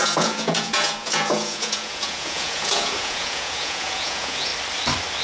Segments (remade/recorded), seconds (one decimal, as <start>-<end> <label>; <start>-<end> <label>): 0.0-4.5 remade; 4.5-5.2 recorded